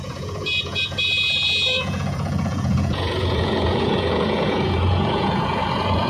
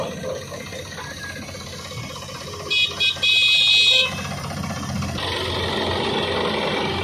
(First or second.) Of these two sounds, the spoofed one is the first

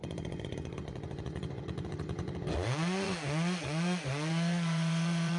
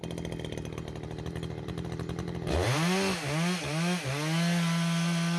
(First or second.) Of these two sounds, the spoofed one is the first